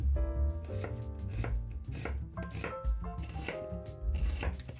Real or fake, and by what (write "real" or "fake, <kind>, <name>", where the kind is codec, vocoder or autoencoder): real